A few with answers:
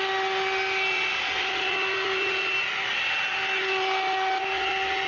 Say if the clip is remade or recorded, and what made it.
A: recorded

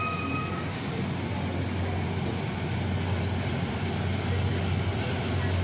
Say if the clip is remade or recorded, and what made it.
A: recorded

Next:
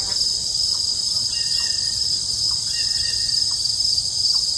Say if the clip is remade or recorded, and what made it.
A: recorded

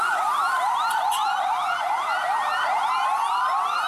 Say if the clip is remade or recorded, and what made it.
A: recorded